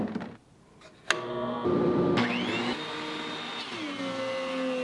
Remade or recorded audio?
recorded